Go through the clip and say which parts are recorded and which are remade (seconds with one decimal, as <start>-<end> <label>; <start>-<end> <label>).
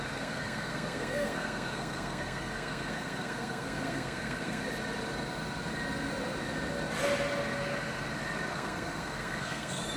0.0-4.6 remade; 4.6-8.5 recorded; 8.5-10.0 remade